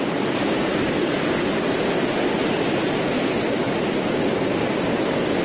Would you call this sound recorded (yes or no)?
yes